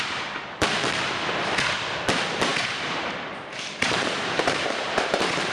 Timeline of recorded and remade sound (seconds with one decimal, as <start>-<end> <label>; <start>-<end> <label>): 0.0-2.5 recorded; 2.5-5.5 remade